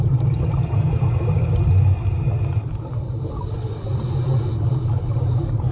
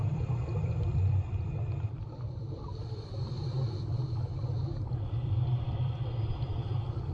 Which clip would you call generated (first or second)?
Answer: second